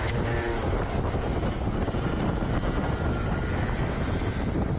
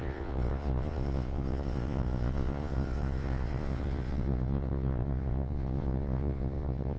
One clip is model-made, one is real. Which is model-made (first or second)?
second